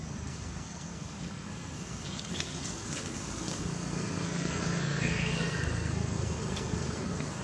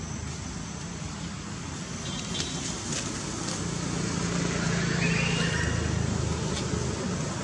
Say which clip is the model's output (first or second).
first